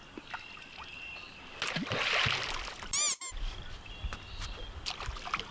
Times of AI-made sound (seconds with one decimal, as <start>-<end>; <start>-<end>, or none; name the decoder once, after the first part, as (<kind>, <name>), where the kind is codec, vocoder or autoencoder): none

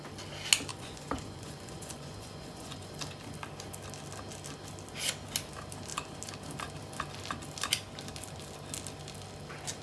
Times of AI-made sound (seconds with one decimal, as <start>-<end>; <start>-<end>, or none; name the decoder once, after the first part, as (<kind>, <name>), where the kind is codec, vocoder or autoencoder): 0.7-2.9 (vocoder, Vocos)

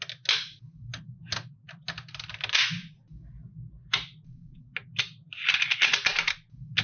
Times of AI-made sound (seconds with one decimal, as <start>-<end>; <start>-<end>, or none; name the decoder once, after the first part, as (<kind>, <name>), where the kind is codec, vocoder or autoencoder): none

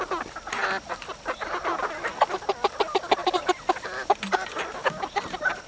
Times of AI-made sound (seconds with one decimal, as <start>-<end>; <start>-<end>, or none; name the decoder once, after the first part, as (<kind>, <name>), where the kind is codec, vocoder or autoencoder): none

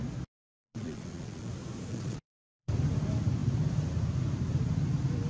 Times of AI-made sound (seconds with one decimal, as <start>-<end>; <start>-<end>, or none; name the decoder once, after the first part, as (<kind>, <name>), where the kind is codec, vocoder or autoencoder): 0.5-1.5 (vocoder, Vocos); 1.9-2.7